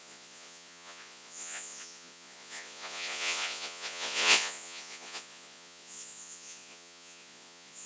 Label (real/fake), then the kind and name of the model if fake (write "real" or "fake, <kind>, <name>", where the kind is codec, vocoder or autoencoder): fake, vocoder, Vocos